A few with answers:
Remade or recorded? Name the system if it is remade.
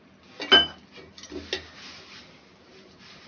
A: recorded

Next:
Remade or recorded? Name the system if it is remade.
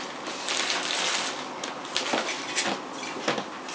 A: recorded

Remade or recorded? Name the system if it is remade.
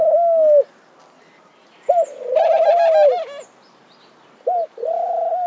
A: recorded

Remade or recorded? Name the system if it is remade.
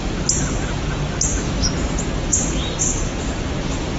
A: recorded